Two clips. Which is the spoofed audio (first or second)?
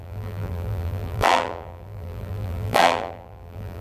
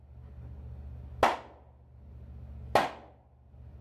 first